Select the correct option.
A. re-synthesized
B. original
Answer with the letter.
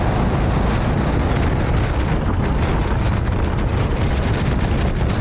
B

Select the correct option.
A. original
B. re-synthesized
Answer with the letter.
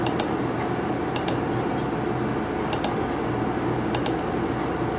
A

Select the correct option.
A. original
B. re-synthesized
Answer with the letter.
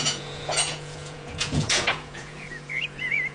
B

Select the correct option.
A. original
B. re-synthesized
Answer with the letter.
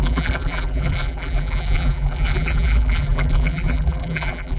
B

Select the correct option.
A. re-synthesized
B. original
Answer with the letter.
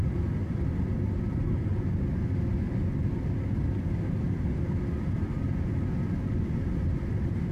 B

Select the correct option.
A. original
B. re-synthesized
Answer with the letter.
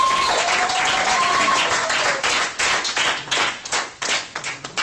B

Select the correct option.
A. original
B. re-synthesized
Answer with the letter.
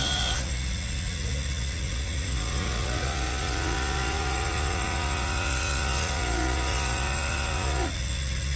B